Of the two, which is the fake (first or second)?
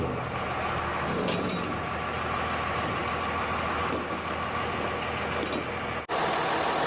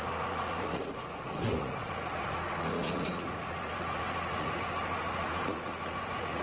second